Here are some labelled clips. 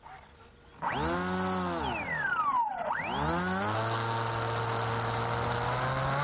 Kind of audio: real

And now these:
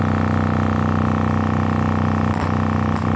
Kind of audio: real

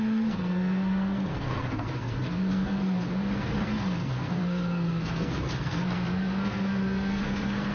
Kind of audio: fake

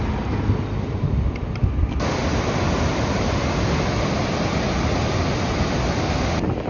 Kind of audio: real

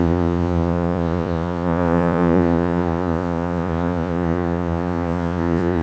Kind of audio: fake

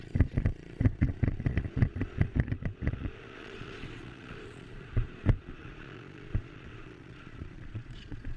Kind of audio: fake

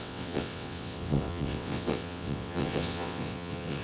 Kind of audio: fake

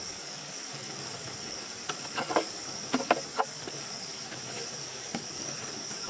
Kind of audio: fake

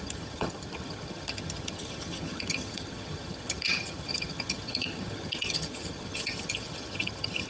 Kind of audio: fake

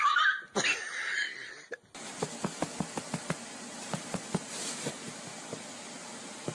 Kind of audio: real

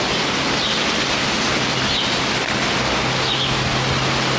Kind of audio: real